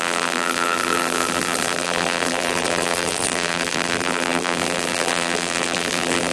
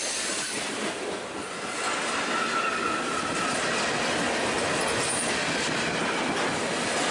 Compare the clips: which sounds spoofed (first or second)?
first